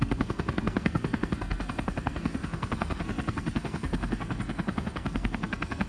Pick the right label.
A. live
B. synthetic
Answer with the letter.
B